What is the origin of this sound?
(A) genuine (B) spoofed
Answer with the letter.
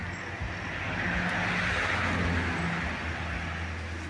A